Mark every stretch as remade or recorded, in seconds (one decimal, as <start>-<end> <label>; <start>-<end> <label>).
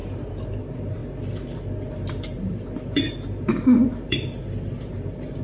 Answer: 0.0-1.0 remade; 1.0-1.9 recorded; 1.9-3.5 remade; 3.5-4.1 recorded; 4.1-5.4 remade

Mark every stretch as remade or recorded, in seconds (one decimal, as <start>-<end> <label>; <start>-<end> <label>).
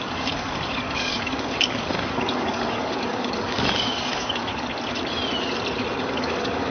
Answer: 0.0-4.5 remade; 4.5-6.0 recorded; 6.0-6.7 remade